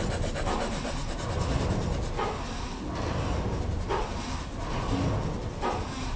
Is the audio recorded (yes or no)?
yes